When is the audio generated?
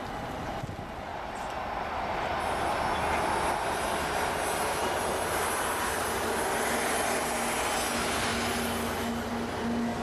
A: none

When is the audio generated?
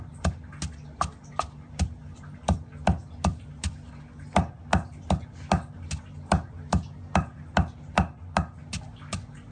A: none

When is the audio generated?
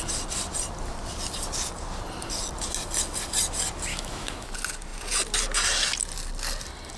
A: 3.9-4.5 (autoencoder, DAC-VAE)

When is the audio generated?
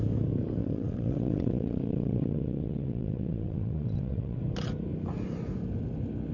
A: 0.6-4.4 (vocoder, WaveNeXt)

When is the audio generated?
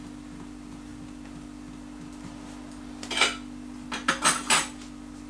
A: none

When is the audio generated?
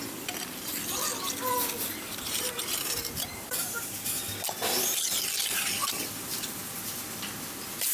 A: 1.9-4.1 (vocoder, BigVGAN v2); 5.8-6.6